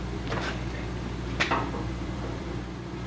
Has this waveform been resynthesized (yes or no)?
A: yes